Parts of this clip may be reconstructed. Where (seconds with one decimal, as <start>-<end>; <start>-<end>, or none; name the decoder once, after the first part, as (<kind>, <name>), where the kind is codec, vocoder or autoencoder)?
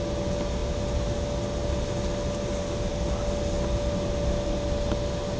none